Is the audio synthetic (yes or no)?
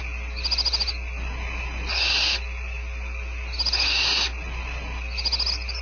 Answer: no